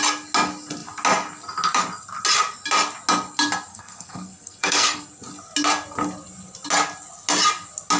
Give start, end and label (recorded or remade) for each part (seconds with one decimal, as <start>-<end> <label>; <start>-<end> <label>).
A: 0.0-3.7 recorded; 3.7-5.1 remade; 5.1-8.0 recorded